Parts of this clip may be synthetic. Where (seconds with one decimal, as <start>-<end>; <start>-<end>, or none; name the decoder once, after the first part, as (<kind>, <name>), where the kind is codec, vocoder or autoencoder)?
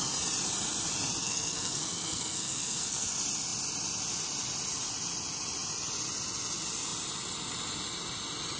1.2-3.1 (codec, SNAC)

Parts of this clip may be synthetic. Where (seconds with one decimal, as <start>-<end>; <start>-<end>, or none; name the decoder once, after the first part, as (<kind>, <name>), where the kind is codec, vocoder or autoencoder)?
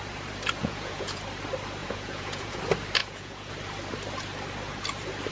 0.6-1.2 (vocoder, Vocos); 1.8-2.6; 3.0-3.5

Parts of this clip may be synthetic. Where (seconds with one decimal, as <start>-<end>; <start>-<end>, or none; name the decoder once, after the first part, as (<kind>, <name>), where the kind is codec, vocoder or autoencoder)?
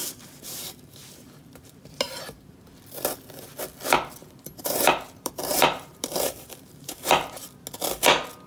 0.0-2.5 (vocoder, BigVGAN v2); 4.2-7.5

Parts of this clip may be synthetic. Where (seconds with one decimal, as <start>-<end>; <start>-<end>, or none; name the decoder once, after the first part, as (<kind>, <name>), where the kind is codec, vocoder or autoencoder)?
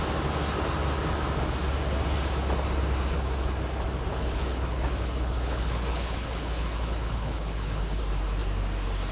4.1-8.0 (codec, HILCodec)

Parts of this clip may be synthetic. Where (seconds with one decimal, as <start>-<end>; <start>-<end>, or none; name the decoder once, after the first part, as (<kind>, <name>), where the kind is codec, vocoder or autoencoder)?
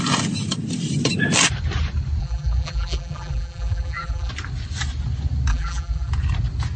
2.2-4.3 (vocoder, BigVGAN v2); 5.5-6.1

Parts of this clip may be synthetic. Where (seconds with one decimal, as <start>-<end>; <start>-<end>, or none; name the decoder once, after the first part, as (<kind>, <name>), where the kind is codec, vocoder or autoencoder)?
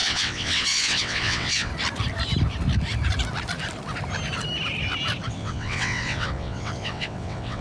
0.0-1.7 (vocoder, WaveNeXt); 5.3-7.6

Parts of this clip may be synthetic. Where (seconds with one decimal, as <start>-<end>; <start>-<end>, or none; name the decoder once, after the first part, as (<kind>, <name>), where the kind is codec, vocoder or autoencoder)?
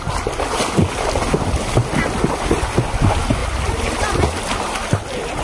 none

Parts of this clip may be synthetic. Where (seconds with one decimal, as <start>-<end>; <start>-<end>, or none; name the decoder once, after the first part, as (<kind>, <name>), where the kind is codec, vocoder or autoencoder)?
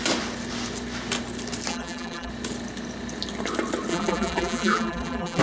1.7-2.3 (vocoder, BigVGAN v2); 3.9-5.4